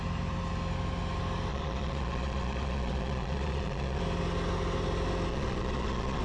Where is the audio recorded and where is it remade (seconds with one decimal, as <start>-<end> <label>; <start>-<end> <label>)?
0.0-1.5 recorded; 1.5-4.0 remade; 4.0-5.3 recorded; 5.3-6.2 remade